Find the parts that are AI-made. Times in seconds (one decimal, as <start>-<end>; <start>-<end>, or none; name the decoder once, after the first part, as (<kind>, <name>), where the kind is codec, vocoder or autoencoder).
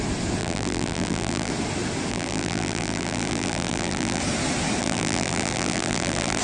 0.4-1.5 (vocoder, BigVGAN v2); 2.1-4.2; 4.8-6.4